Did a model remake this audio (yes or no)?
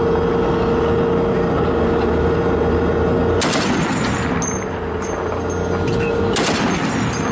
no